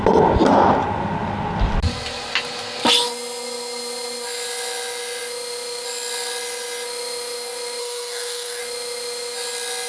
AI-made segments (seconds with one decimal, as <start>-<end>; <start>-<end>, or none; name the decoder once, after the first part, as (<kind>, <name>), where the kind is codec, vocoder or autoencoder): 7.8-8.6 (codec, SNAC)